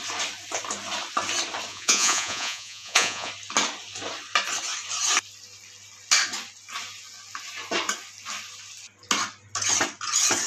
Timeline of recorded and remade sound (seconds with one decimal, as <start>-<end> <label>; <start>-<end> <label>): 0.0-1.7 recorded; 1.7-3.3 remade; 3.3-10.5 recorded